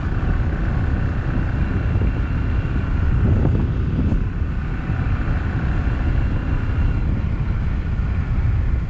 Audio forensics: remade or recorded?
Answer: recorded